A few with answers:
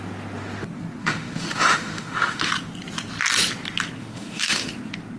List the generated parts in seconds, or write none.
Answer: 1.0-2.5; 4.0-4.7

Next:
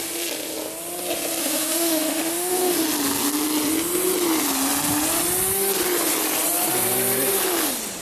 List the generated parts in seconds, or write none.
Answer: 1.4-2.7

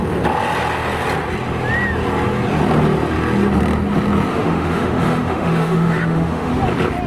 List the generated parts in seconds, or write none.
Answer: 4.3-6.5